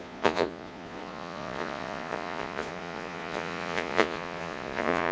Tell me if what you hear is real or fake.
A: fake